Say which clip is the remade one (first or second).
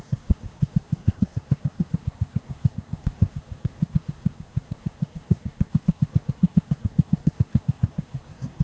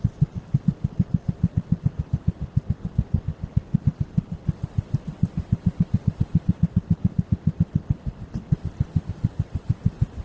first